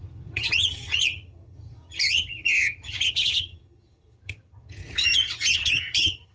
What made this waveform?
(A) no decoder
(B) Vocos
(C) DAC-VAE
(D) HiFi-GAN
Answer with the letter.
D